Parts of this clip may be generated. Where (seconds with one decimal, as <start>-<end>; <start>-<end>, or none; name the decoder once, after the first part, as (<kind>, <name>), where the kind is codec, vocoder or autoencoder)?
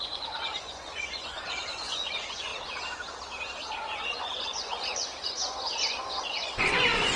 0.0-2.5 (vocoder, Vocos); 3.8-7.2